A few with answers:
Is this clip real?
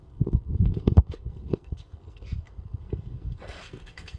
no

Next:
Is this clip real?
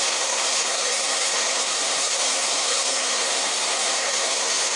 no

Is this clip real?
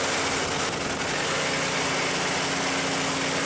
yes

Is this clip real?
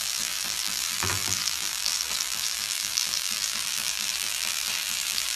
no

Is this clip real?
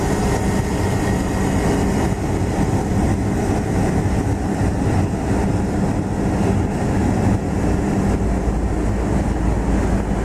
yes